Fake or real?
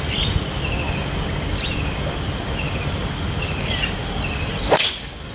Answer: real